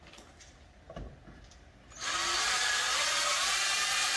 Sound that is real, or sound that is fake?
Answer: real